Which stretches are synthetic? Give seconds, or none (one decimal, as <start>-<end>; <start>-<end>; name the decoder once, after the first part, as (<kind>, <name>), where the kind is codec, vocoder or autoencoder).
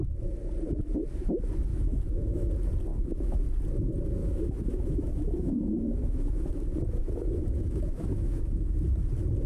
1.7-2.5 (autoencoder, DAC-VAE); 2.9-3.4; 4.2-6.5; 7.0-8.8